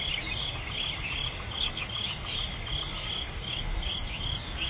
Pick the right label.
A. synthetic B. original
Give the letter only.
B